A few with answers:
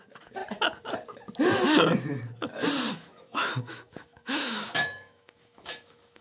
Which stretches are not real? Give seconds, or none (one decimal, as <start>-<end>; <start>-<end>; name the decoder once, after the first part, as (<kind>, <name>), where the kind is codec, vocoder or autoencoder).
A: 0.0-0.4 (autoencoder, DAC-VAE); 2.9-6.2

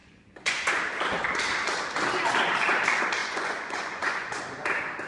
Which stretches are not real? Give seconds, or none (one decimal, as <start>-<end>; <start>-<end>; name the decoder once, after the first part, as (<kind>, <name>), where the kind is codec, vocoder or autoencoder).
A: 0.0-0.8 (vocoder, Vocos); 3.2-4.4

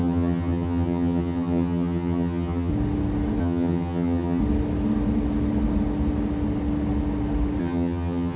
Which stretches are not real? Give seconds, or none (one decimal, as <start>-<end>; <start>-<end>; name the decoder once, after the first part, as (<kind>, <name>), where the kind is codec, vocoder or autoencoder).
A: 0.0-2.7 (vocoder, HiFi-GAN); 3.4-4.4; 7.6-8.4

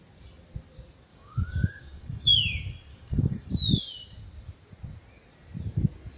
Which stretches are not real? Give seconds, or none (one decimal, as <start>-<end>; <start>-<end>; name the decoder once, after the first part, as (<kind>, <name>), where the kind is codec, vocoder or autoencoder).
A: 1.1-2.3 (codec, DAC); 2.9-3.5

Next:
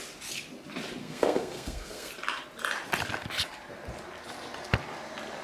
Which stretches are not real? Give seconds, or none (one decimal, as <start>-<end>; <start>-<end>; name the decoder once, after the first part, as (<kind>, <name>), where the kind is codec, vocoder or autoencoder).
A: 1.0-2.1 (codec, SNAC)

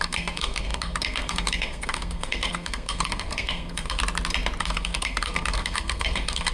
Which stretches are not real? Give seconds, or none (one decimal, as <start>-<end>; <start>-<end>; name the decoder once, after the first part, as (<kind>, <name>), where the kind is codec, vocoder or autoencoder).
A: 0.0-4.0 (codec, SNAC); 4.6-6.5